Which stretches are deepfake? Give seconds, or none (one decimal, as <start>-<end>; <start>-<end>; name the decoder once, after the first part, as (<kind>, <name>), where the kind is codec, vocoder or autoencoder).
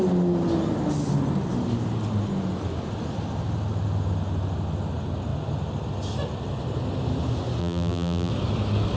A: 7.6-8.3 (vocoder, BigVGAN v2)